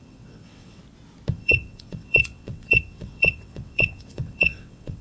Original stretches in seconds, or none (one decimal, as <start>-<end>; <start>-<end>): 0.8-1.3